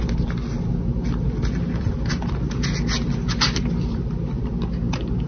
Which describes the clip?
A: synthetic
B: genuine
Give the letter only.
B